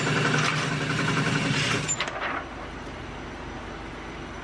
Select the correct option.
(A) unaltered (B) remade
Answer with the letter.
A